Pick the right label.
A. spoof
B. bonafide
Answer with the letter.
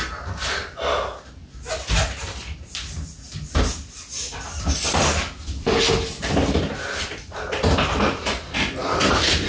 B